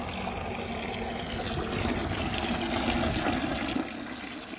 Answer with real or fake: real